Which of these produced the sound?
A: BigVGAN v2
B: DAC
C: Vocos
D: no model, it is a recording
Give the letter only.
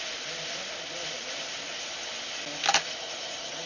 D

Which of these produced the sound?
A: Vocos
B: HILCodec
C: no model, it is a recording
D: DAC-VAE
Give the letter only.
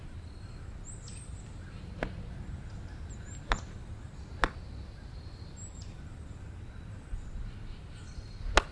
C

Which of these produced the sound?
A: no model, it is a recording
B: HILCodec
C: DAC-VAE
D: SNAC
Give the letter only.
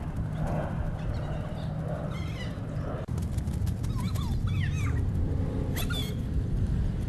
A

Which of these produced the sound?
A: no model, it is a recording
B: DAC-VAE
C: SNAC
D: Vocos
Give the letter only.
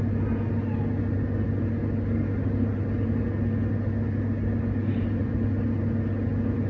A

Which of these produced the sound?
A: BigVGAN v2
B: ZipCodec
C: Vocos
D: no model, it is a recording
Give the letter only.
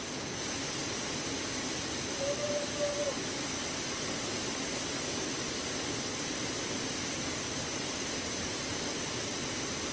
D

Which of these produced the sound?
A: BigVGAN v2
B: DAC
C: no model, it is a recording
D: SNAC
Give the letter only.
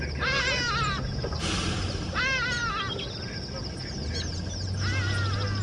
C